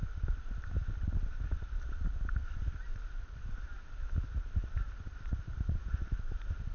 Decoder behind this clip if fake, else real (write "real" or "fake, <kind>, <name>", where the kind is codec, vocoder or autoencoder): fake, vocoder, BigVGAN v2